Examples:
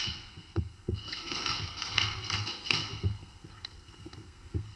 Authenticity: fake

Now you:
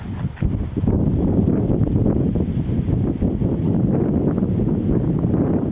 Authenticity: real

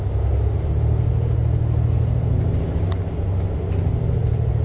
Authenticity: real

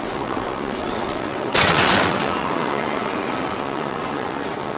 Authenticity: fake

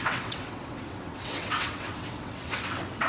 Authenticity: fake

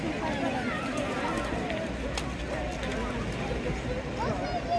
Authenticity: real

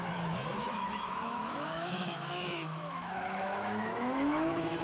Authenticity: fake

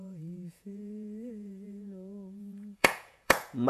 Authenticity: fake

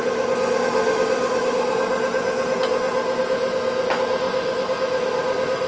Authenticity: real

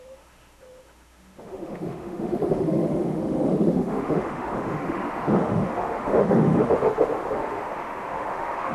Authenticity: fake